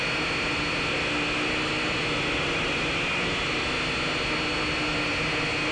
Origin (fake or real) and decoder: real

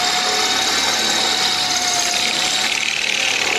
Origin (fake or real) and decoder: real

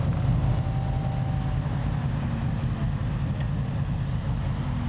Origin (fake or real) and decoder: real